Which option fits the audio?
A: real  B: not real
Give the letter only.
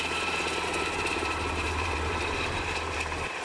B